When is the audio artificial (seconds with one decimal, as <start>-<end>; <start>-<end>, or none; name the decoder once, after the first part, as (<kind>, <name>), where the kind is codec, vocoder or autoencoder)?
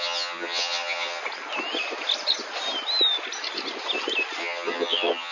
0.0-1.2 (vocoder, HiFi-GAN); 4.4-5.3